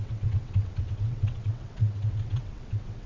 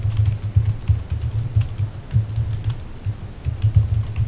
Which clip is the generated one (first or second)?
first